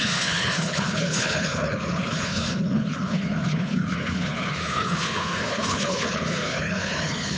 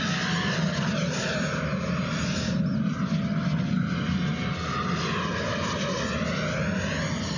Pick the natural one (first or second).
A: second